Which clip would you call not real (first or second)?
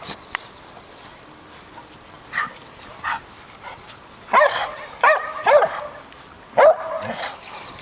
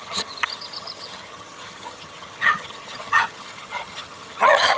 second